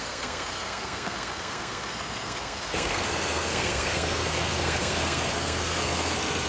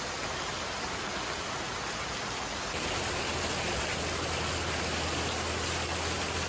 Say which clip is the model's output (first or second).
first